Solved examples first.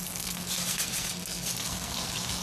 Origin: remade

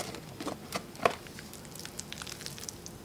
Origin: recorded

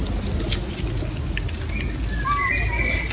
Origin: recorded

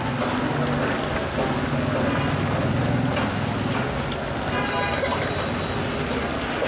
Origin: recorded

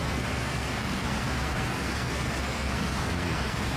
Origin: remade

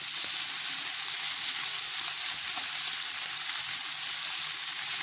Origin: recorded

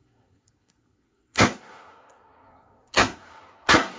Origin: remade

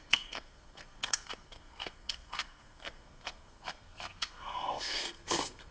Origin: remade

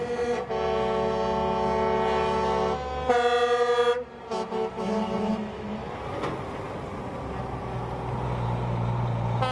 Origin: recorded